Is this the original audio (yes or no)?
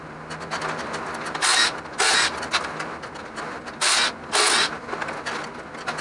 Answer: yes